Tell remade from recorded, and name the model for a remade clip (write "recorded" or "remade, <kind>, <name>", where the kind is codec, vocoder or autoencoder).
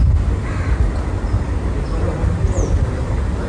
recorded